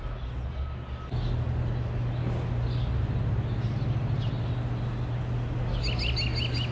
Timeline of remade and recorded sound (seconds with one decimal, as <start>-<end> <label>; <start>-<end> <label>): 0.0-6.7 recorded